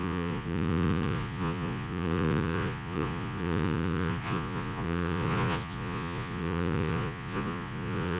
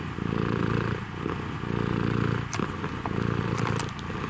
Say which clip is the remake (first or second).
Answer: first